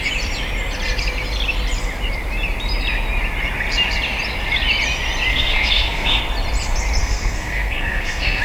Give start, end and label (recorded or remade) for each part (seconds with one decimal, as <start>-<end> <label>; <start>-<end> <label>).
0.0-5.3 recorded; 5.3-6.2 remade; 6.2-7.0 recorded; 7.0-8.4 remade